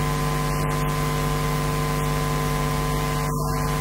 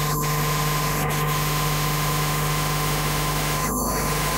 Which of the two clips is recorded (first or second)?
first